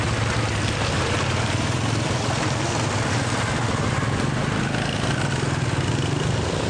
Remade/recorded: recorded